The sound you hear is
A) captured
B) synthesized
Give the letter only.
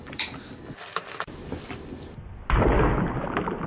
A